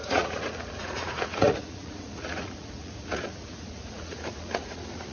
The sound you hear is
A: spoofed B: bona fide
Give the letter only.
A